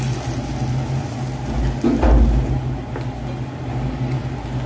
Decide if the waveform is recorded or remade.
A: recorded